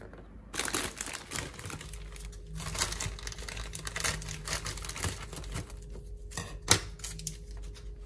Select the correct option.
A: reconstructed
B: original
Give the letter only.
B